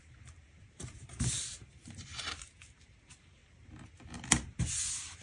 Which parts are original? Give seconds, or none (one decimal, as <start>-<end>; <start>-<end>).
3.4-4.6